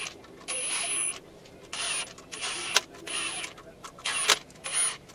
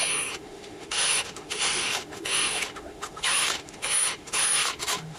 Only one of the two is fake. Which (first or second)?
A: second